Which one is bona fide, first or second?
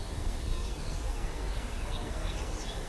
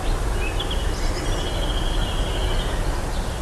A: second